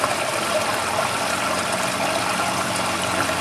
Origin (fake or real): real